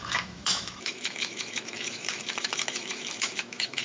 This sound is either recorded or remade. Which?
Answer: remade